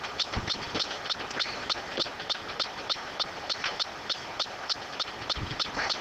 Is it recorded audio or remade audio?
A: remade